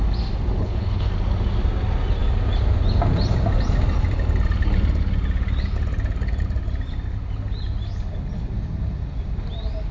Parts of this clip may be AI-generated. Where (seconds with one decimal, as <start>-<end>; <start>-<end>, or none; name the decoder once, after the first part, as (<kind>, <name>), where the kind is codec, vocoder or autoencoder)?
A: 0.6-1.1 (codec, HILCodec)